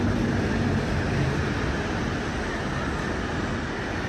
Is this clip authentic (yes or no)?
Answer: yes